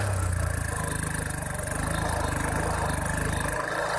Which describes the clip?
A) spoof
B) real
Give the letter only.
B